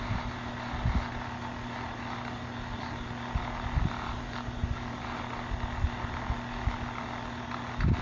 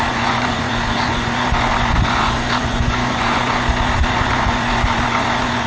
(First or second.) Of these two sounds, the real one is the first